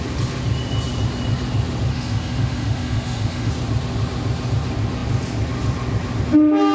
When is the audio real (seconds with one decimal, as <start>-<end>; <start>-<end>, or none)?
0.0-1.9; 3.5-6.7